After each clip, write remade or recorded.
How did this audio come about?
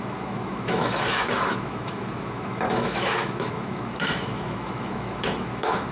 remade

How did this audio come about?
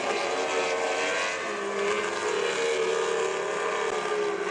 recorded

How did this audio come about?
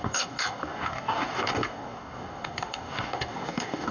remade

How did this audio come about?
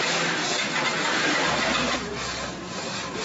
recorded